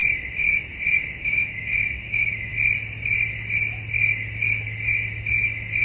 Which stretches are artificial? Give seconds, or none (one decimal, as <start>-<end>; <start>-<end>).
1.2-2.5